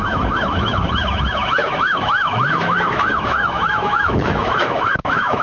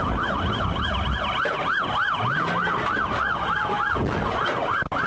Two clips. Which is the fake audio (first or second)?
first